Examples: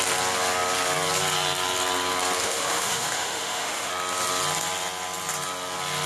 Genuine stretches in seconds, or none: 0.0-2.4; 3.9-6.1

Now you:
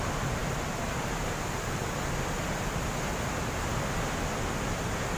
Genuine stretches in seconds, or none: 0.0-5.2

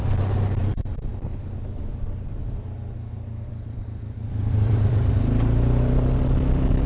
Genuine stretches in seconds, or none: none